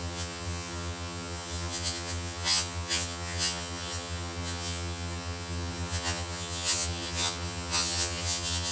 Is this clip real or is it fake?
fake